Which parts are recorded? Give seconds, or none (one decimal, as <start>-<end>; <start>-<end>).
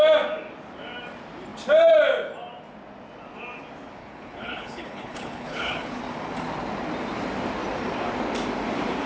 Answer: 0.0-4.0; 6.0-9.1